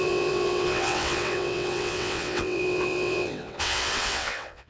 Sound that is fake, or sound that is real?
fake